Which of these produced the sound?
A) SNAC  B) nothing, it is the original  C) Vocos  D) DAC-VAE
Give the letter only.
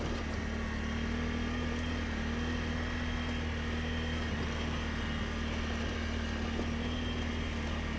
B